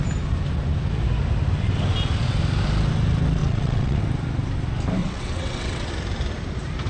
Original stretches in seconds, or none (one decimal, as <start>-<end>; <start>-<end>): 0.0-3.4; 4.0-5.0; 5.9-6.9

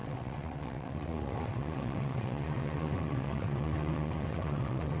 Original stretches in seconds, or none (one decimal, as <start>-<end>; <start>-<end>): none

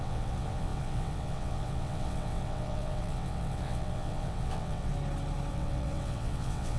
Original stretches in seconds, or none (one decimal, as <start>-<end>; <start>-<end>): 4.9-5.5